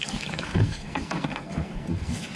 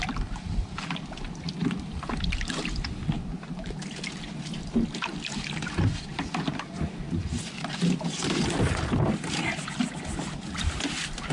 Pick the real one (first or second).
second